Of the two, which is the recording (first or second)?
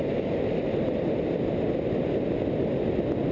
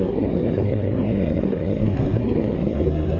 first